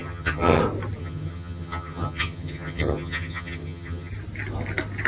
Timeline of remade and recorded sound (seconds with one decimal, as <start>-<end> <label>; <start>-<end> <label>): 0.0-0.6 remade; 0.6-1.0 recorded; 1.0-4.1 remade; 4.1-5.1 recorded